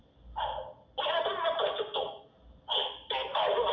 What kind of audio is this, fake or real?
real